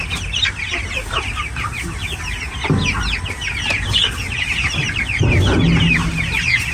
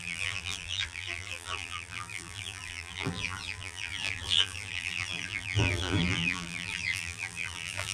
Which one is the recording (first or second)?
first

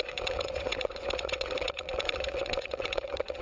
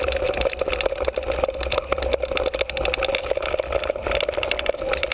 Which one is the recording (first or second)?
second